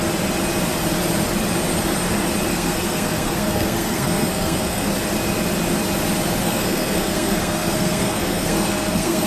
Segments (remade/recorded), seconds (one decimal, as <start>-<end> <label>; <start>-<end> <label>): 0.0-2.5 recorded; 2.5-4.9 remade; 4.9-6.4 recorded; 6.4-9.3 remade